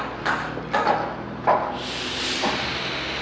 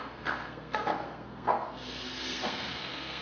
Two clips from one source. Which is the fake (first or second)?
second